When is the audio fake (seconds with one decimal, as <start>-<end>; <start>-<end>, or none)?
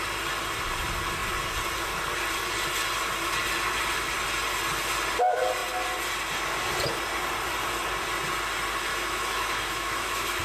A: 8.9-10.4